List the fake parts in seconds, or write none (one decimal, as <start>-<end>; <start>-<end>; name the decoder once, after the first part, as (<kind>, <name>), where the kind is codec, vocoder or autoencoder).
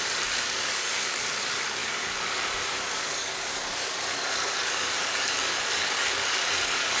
0.0-7.0 (codec, DAC)